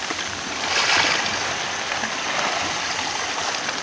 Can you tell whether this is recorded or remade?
recorded